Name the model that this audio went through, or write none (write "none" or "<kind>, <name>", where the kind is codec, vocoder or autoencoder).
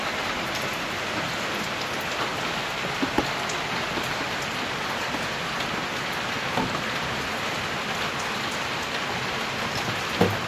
none